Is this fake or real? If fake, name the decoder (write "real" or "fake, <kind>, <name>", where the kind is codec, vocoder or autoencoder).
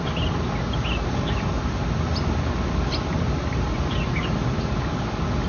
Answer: real